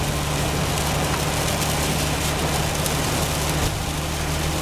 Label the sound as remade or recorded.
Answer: recorded